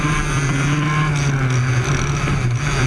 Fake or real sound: real